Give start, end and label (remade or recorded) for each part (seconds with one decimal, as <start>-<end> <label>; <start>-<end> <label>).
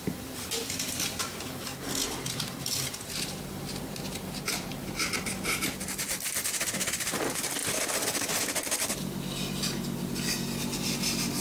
0.0-11.4 recorded